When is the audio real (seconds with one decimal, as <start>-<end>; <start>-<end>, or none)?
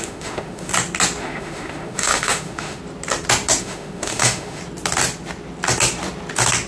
0.7-1.2; 2.8-3.6; 4.6-6.7